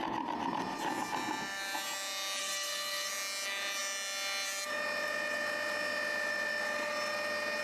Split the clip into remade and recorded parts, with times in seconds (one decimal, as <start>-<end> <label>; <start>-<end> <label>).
0.0-2.4 recorded; 2.4-3.1 remade; 3.1-7.6 recorded